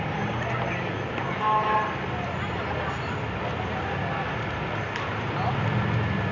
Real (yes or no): yes